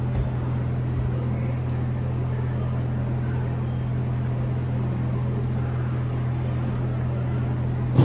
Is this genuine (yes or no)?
yes